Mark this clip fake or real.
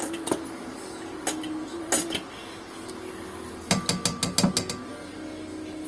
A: real